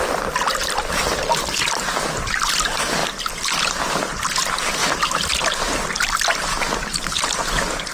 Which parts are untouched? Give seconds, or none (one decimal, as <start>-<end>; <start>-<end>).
0.0-4.8; 5.3-7.9